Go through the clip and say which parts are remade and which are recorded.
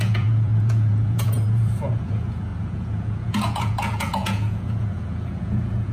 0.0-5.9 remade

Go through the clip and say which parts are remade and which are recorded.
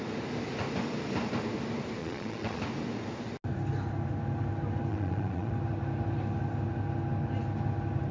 0.0-2.0 recorded; 2.0-2.6 remade; 2.6-4.9 recorded; 4.9-5.5 remade; 5.5-8.1 recorded